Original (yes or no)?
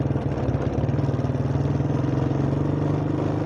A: yes